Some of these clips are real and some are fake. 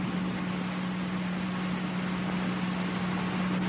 real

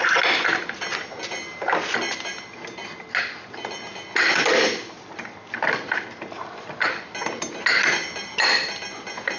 real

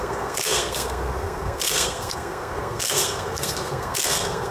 fake